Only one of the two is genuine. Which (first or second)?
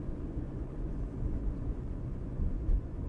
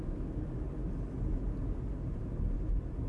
second